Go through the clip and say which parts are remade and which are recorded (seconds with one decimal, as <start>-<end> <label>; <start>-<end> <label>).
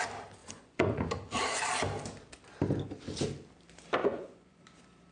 0.0-0.4 recorded; 0.4-1.1 remade; 1.1-4.0 recorded; 4.0-4.6 remade; 4.6-5.1 recorded